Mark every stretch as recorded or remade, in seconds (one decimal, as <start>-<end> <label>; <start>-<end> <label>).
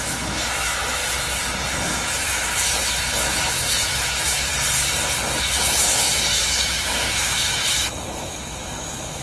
0.0-1.0 remade; 1.0-1.7 recorded; 1.7-4.5 remade; 4.5-5.4 recorded; 5.4-9.2 remade